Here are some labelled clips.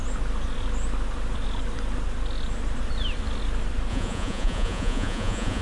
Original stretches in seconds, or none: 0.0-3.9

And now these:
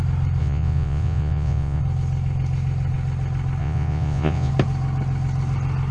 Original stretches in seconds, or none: 0.0-0.4; 1.8-3.6; 4.5-5.9

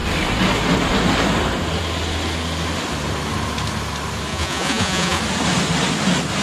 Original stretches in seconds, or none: 0.0-4.3; 5.2-6.4

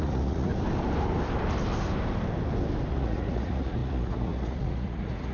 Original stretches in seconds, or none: 0.5-2.9